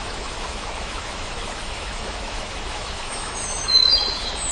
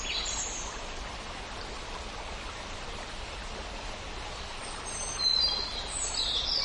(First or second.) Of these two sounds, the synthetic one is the first